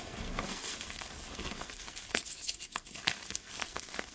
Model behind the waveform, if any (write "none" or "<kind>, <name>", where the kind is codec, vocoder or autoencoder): codec, SNAC